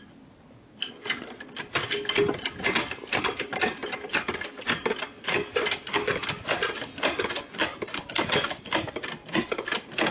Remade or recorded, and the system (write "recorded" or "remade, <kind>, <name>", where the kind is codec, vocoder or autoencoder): recorded